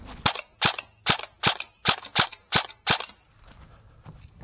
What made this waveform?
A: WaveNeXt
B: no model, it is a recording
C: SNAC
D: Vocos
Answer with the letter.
B